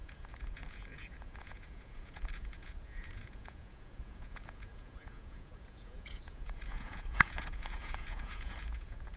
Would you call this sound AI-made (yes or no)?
yes